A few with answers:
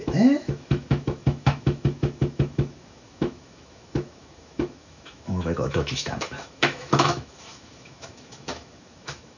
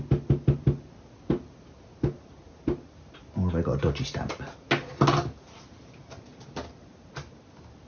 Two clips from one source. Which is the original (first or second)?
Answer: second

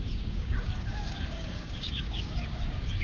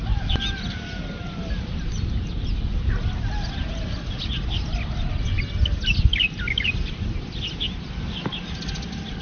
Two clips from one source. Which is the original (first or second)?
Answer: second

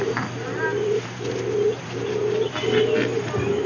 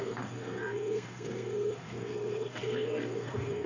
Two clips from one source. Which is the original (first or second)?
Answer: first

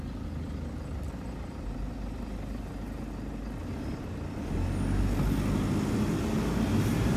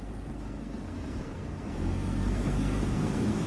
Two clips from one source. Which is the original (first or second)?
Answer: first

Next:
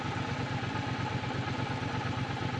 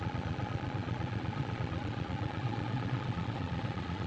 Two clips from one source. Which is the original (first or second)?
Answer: first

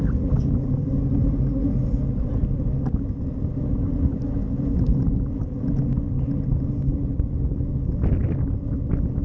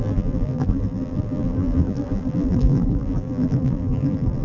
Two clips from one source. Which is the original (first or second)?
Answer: first